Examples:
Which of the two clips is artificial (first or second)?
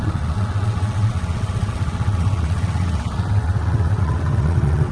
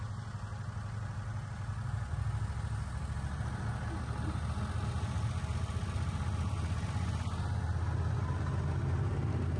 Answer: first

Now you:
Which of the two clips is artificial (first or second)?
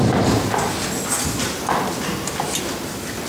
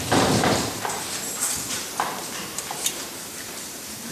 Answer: second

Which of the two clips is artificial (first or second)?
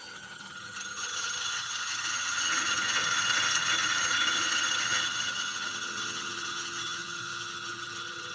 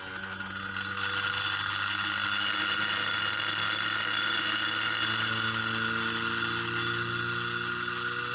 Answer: first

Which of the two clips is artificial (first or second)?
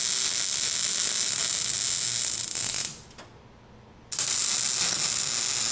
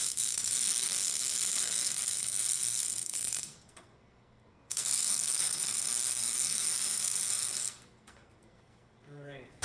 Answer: second